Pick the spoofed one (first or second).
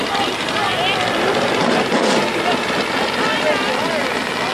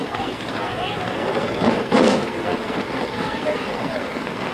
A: second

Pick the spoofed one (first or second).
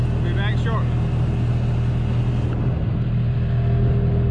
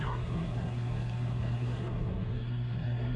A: second